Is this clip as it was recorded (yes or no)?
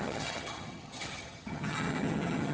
no